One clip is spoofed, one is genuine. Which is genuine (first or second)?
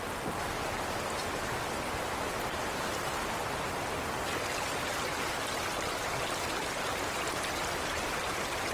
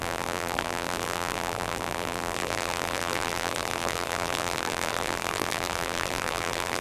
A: first